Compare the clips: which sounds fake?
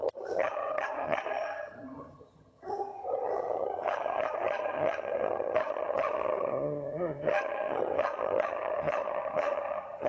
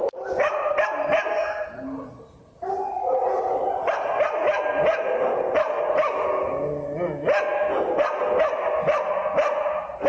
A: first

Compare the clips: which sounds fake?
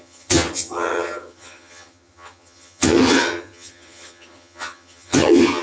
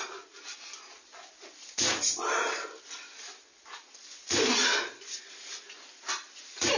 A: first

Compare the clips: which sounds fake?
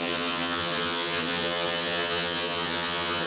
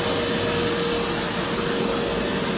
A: first